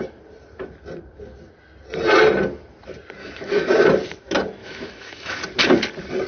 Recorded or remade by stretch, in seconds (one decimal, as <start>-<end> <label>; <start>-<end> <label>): 0.0-3.2 recorded; 3.2-3.7 remade; 3.7-4.6 recorded; 4.6-5.4 remade; 5.4-6.3 recorded